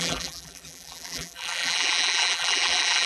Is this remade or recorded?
remade